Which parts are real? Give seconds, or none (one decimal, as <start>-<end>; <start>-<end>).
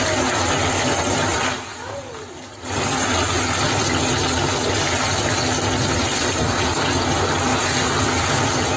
0.0-7.5; 8.3-8.8